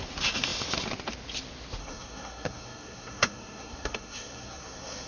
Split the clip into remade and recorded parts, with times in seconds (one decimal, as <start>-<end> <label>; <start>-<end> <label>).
0.0-1.8 recorded; 1.8-5.1 remade

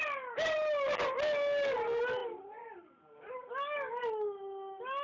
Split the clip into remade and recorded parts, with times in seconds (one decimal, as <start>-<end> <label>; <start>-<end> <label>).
0.0-5.0 recorded